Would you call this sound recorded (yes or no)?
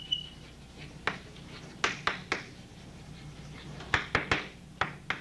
yes